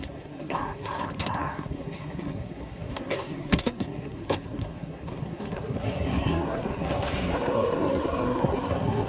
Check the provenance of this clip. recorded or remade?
remade